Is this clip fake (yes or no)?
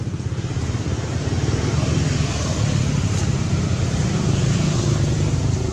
yes